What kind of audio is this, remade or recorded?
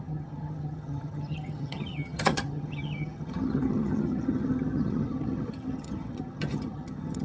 remade